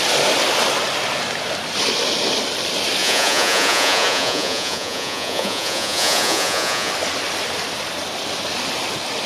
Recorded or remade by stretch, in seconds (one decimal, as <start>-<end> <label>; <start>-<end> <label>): 0.0-3.0 recorded; 3.0-6.9 remade; 6.9-9.3 recorded